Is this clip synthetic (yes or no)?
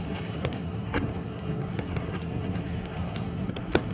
yes